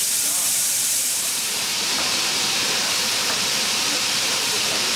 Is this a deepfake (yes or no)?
yes